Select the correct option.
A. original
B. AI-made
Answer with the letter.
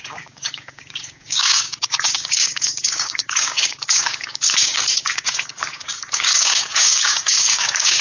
B